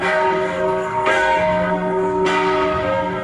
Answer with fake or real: fake